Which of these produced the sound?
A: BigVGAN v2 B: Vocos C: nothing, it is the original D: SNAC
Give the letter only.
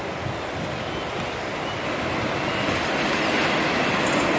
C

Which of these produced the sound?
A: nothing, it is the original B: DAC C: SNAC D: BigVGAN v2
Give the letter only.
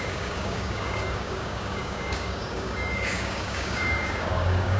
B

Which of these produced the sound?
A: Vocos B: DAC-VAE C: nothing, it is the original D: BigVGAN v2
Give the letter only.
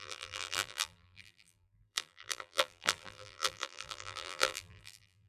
D